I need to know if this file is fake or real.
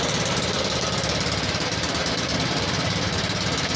fake